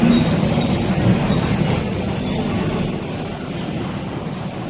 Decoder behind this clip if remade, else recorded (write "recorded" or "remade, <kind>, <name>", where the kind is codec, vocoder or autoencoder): recorded